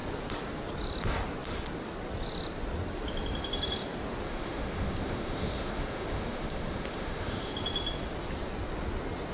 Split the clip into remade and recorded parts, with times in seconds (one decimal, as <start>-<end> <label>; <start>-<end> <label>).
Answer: 0.0-4.3 recorded; 4.3-7.5 remade; 7.5-9.3 recorded